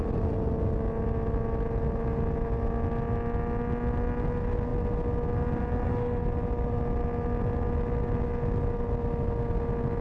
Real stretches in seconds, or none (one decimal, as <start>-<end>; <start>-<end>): 0.0-10.0